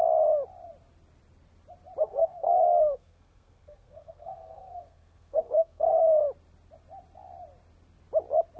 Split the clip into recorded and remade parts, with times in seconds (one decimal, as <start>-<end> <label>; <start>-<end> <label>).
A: 0.0-2.0 recorded; 2.0-6.2 remade; 6.2-8.6 recorded